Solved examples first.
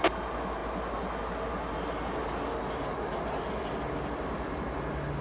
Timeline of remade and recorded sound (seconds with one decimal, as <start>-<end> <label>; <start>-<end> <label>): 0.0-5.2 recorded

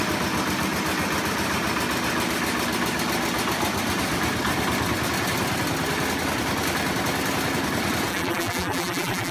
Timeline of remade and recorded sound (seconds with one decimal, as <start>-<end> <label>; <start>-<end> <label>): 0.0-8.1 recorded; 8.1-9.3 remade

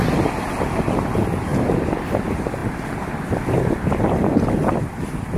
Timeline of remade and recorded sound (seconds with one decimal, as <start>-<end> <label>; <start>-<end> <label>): 0.0-1.5 recorded; 1.5-2.0 remade; 2.0-2.6 recorded; 2.6-4.8 remade; 4.8-5.4 recorded

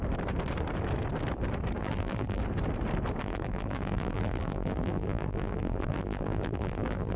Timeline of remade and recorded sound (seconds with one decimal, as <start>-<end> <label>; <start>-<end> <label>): 0.0-1.8 recorded; 1.8-2.4 remade; 2.4-3.2 recorded; 3.2-7.2 remade

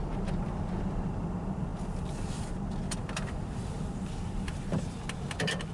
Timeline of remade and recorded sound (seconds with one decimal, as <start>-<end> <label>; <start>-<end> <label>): 0.0-1.7 recorded; 1.7-2.4 remade; 2.4-5.7 recorded

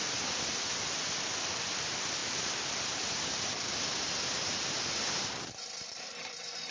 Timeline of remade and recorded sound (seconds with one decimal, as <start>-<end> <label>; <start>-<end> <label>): 0.0-6.7 recorded

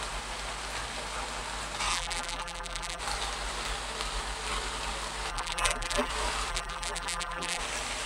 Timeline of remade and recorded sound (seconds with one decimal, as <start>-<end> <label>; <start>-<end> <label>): 0.0-1.9 recorded; 1.9-3.0 remade; 3.0-5.3 recorded; 5.3-6.1 remade; 6.1-6.5 recorded; 6.5-7.6 remade; 7.6-8.1 recorded